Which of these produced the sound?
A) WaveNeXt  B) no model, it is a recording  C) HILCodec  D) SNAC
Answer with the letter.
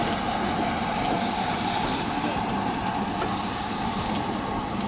B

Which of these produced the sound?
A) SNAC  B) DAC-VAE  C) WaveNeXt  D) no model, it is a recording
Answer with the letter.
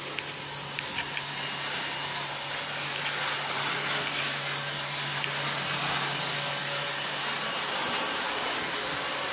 D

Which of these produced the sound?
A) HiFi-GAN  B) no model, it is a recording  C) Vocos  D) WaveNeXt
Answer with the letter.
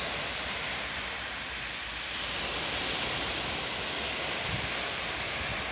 B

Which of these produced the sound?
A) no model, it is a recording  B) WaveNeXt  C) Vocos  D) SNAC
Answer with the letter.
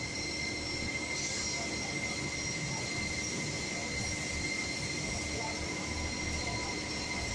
A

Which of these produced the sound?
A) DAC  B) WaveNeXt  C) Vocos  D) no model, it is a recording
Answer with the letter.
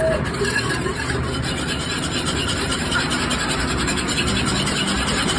D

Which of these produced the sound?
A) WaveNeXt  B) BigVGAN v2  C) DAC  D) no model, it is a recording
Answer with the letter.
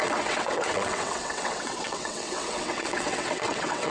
A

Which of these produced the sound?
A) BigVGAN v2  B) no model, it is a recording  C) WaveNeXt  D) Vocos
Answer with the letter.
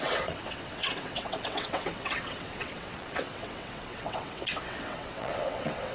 C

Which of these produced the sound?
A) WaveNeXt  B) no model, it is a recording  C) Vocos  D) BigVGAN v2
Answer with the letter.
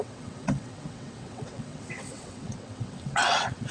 A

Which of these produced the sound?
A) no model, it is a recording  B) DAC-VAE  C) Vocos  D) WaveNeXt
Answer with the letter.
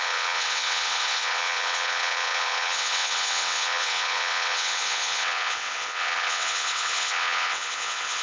D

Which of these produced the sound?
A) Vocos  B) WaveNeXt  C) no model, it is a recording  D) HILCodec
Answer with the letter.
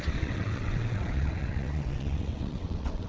B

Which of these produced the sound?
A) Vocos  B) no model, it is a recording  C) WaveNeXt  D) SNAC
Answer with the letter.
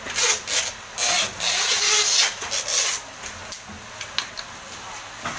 B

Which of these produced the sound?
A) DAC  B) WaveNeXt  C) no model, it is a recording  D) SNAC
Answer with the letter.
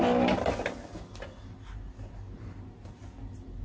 C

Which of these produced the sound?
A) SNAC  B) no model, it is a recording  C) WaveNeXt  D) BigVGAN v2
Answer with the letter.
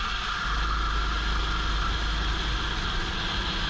B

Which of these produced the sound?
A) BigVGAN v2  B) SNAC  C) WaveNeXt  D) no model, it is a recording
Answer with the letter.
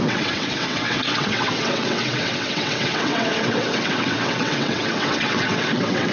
C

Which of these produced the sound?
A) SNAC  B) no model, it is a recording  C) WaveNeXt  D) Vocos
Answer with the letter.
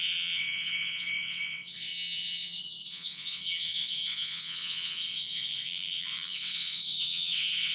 C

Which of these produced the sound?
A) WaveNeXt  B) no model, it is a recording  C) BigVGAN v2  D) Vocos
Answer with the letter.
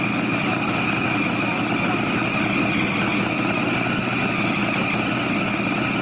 B